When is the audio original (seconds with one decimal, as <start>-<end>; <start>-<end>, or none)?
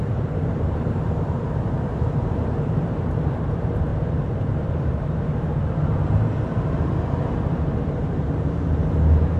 6.9-7.5